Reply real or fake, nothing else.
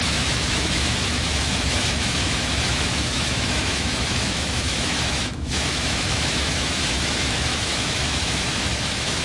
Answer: fake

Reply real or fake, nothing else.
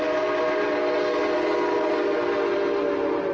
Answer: real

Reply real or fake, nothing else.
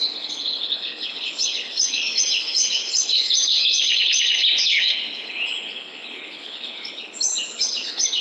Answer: fake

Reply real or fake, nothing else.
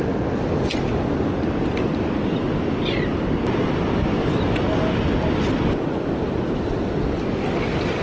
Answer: real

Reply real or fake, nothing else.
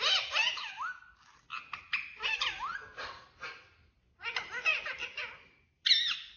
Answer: real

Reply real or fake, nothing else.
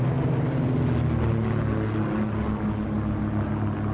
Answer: real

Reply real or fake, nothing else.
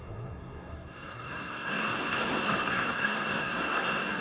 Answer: fake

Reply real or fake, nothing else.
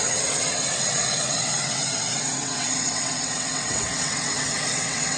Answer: fake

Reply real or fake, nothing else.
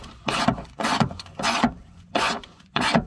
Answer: fake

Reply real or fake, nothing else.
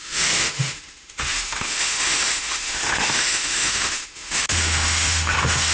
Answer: fake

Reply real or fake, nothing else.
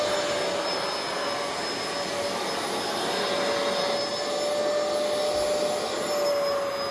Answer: real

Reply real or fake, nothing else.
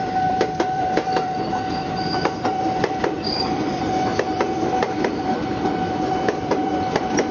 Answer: fake